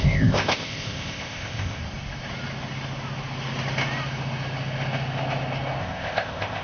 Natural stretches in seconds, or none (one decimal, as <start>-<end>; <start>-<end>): 1.8-5.8